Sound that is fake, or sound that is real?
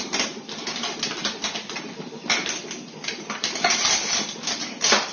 real